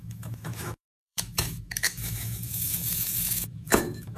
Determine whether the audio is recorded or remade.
remade